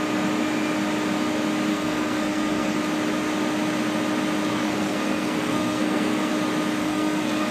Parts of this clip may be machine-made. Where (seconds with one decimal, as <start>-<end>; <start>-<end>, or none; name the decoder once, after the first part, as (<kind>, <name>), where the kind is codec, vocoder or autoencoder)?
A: 1.7-2.8 (codec, SNAC); 4.5-6.3; 6.8-7.5